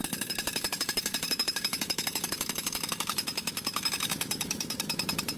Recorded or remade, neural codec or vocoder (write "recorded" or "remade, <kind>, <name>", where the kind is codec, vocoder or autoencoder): remade, autoencoder, DAC-VAE